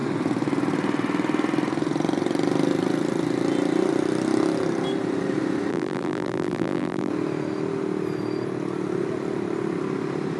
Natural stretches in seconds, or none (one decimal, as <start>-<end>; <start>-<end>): 0.0-5.7; 7.1-10.4

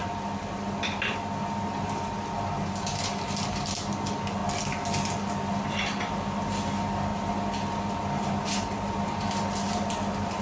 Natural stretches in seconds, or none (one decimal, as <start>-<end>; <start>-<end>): 0.0-10.4

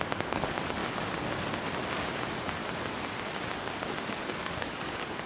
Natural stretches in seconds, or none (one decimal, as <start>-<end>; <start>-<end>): 0.8-4.0

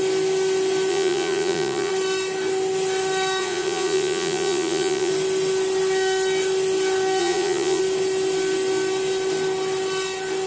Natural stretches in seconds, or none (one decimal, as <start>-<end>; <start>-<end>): 0.0-0.9; 1.9-3.4; 5.1-7.2; 7.8-10.5

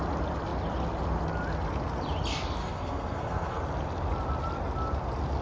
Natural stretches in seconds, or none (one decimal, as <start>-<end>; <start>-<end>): 0.0-2.6; 3.6-5.4

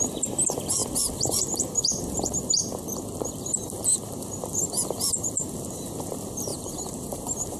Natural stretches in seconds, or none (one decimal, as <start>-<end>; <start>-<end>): 0.0-6.5